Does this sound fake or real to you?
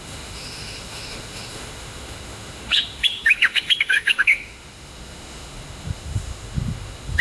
fake